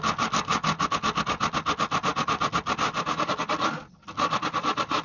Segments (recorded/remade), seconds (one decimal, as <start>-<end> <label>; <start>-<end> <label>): 0.0-5.0 recorded